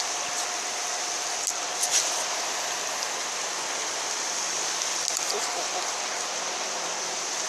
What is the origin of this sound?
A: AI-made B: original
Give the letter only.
B